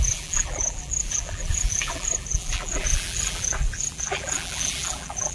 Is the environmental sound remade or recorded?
remade